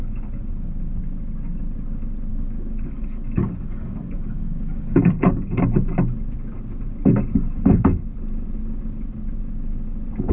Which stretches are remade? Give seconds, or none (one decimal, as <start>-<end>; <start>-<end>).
2.3-5.6

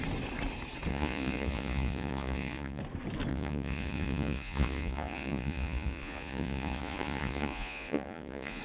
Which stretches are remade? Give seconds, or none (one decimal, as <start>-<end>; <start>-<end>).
0.9-2.8; 3.3-8.6

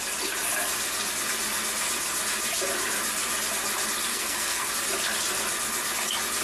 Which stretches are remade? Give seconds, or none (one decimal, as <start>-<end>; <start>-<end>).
4.1-4.7

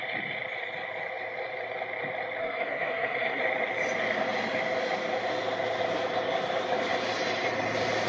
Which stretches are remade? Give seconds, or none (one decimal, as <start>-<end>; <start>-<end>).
2.4-3.4

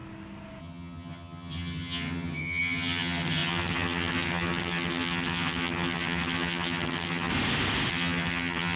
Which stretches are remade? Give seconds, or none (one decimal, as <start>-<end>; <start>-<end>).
0.6-7.3; 7.9-8.8

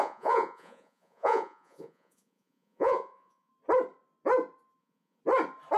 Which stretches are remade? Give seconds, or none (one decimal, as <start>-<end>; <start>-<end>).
0.0-3.5; 4.8-5.2

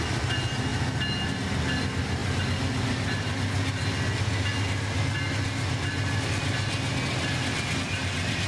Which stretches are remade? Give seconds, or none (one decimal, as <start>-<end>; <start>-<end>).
none